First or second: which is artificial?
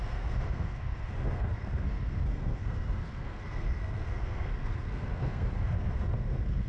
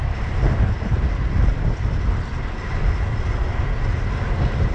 first